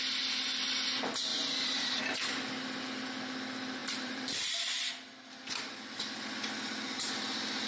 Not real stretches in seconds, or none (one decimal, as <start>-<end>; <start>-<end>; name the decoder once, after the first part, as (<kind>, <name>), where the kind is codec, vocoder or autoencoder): 1.3-2.0 (vocoder, BigVGAN v2); 3.8-4.8